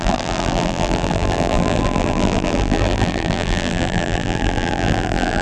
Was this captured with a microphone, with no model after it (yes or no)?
no